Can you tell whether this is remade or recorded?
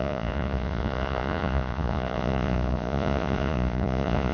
remade